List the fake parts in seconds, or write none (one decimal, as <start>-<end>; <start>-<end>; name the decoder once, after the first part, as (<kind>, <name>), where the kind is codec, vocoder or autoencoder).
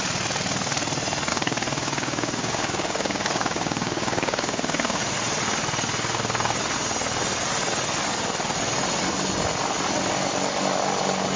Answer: 1.3-5.0 (codec, DAC)